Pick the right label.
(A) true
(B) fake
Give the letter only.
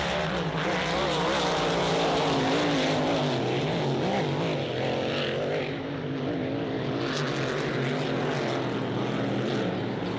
A